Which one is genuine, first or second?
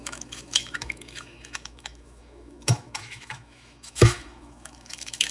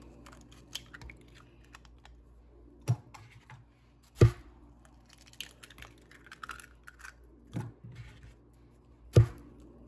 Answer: second